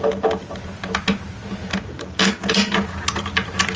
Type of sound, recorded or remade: recorded